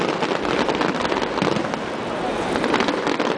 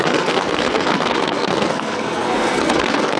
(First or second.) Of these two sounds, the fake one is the second